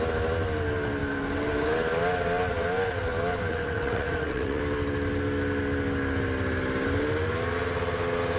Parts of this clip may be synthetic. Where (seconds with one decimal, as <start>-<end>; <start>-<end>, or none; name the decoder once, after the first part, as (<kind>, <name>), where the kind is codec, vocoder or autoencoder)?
3.5-4.6 (vocoder, WaveNeXt)

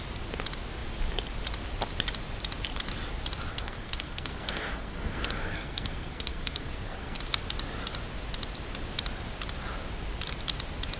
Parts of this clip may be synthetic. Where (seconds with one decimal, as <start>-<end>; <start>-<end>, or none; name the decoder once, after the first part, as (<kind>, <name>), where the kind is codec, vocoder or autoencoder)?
3.5-7.2 (codec, SNAC)

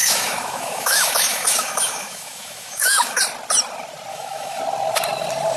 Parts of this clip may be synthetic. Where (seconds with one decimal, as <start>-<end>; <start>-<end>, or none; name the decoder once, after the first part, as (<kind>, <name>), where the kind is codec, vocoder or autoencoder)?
0.0-3.2 (autoencoder, DAC-VAE); 4.1-4.6

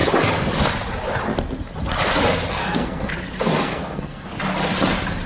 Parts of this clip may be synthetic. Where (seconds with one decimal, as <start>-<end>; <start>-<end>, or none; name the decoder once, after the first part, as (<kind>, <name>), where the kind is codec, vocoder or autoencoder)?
2.5-3.1 (codec, SNAC); 3.5-4.3

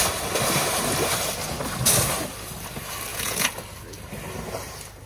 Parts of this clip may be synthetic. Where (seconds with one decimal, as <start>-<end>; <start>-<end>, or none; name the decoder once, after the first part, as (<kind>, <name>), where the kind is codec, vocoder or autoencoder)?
3.1-3.6 (vocoder, Vocos)

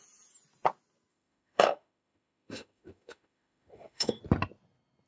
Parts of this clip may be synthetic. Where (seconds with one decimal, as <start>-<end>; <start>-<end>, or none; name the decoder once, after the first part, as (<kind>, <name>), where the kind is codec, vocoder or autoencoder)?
1.1-4.2 (autoencoder, DAC-VAE)

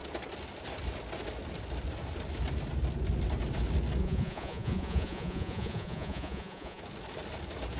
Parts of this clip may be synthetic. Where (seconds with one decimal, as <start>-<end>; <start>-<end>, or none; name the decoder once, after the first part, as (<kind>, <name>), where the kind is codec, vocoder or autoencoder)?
4.0-6.8 (vocoder, Vocos)

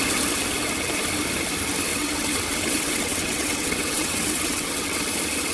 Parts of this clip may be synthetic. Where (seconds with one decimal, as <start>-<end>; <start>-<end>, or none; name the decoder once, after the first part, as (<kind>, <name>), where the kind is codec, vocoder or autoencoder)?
1.9-5.0 (vocoder, WaveNeXt)